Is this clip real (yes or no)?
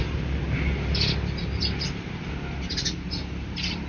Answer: yes